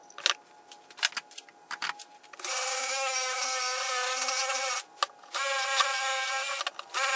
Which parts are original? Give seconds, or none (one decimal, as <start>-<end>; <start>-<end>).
0.0-2.7; 3.4-7.2